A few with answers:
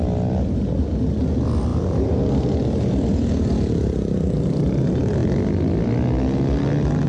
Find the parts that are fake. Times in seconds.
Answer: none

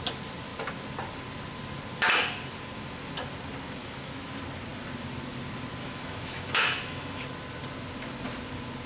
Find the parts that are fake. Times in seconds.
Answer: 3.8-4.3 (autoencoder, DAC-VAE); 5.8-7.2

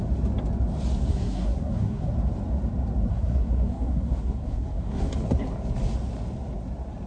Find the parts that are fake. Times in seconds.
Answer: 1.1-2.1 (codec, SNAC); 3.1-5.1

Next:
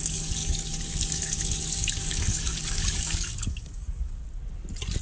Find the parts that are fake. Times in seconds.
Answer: 0.0-4.2 (codec, DAC)